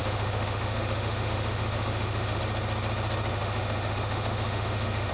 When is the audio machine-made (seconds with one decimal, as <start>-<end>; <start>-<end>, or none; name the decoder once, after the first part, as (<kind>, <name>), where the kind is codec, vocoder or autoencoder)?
0.0-2.4 (autoencoder, DAC-VAE); 3.3-5.1